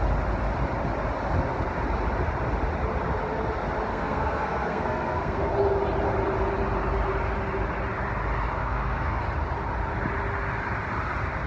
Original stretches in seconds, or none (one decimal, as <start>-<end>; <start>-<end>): 0.0-3.9; 5.5-8.6; 9.2-11.5